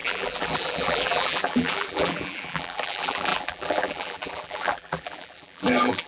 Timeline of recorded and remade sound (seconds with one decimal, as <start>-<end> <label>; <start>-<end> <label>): 0.0-6.1 remade